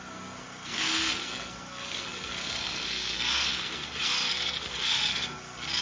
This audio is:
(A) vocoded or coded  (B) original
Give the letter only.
A